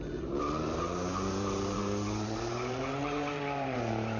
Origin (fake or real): fake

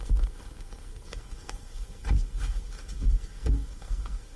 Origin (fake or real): fake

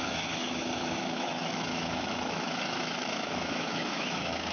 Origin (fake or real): fake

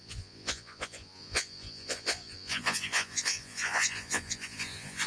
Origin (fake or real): fake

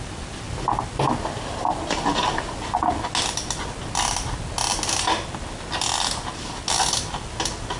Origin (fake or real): real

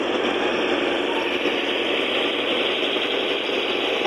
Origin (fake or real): real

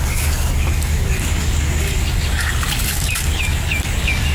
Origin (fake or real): fake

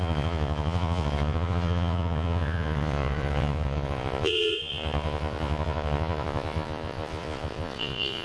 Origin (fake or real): fake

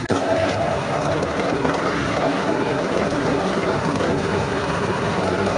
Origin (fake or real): fake